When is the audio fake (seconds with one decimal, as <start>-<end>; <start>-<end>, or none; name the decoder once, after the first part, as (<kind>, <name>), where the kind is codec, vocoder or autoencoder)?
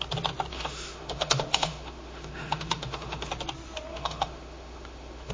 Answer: 0.5-3.3 (autoencoder, DAC-VAE); 3.9-5.3